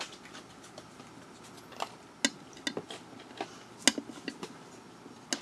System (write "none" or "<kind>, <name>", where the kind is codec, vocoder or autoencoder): none